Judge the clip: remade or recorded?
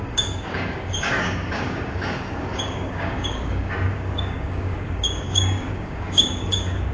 remade